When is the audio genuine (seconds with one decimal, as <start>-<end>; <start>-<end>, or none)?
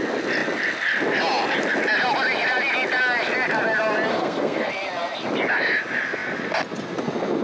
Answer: 0.0-4.1; 4.7-7.4